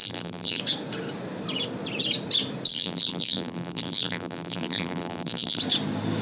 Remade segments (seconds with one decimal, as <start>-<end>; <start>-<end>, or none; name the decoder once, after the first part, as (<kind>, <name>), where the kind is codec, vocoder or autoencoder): 0.0-0.6 (vocoder, BigVGAN v2); 2.7-5.6